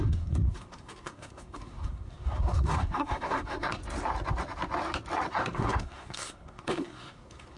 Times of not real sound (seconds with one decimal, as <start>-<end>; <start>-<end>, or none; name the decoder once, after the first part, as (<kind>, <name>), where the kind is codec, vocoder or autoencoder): 0.0-3.8 (codec, SNAC); 5.3-7.6